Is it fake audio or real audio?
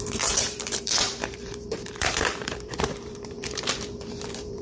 fake